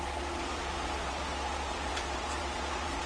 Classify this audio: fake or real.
fake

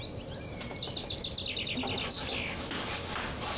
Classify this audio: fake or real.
real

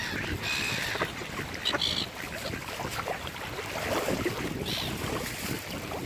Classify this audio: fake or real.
real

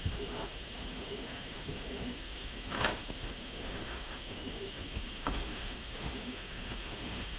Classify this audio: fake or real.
fake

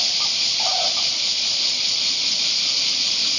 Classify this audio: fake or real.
fake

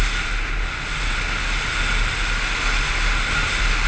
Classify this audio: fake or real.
real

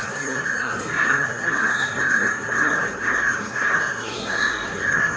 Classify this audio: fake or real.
fake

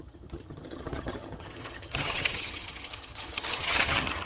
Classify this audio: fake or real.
fake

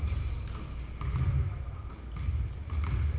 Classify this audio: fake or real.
real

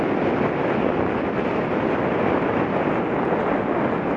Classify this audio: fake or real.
real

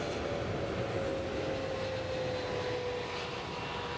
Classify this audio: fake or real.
real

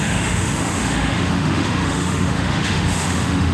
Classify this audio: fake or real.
fake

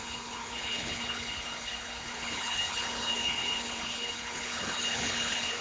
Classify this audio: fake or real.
fake